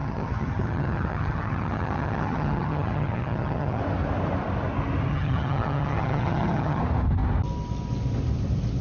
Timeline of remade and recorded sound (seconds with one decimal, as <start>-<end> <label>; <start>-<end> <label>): 0.0-3.8 remade; 3.8-5.1 recorded; 5.1-6.8 remade; 6.8-8.8 recorded